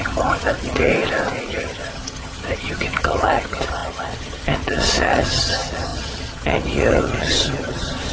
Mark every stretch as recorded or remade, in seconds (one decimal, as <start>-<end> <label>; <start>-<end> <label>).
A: 0.0-0.9 remade; 0.9-1.5 recorded; 1.5-8.1 remade